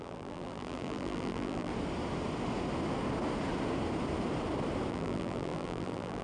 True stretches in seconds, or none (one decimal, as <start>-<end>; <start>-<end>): 1.7-4.9